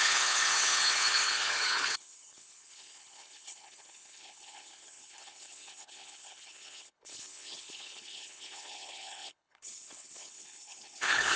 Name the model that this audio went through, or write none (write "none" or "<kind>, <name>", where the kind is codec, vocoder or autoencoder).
codec, HILCodec